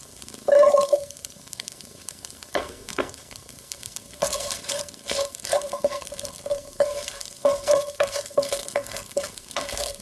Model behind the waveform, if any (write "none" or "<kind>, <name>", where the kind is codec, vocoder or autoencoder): codec, SNAC